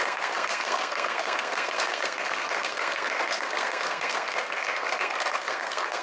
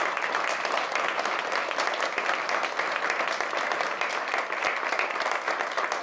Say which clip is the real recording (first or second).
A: second